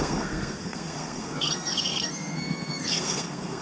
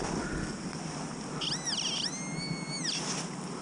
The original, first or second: second